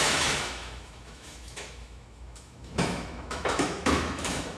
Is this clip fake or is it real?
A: fake